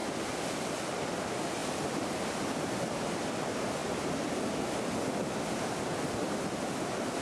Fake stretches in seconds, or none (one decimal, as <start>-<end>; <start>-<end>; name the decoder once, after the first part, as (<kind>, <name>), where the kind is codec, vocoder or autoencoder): 0.0-1.0 (vocoder, BigVGAN v2); 3.8-4.5